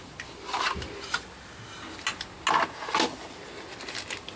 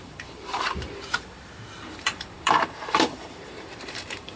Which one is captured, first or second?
first